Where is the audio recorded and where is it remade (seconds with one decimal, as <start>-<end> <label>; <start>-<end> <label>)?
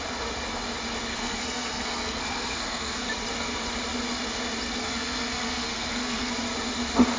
0.0-1.1 recorded; 1.1-3.1 remade; 3.1-4.8 recorded; 4.8-6.3 remade; 6.3-7.2 recorded